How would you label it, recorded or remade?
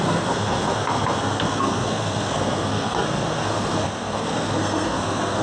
remade